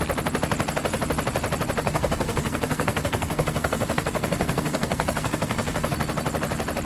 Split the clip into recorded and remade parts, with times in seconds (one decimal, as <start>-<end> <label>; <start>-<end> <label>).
0.0-1.8 recorded; 1.8-5.9 remade; 5.9-6.9 recorded